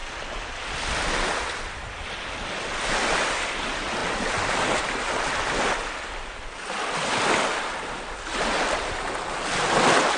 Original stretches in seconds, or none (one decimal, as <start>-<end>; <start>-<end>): 0.0-10.2